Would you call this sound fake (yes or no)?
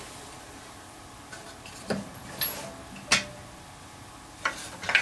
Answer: no